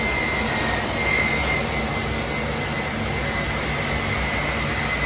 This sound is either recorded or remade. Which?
recorded